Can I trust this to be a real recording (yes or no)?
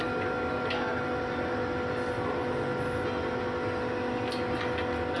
yes